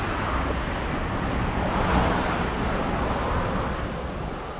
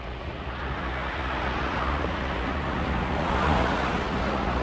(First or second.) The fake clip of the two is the second